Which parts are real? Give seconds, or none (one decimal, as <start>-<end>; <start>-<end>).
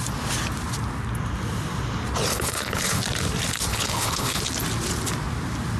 0.0-2.3; 3.0-3.7; 4.4-5.8